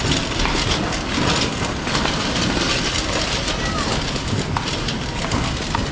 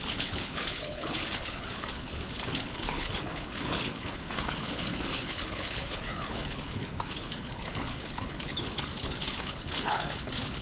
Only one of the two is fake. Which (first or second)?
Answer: second